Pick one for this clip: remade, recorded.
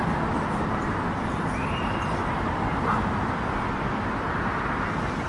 recorded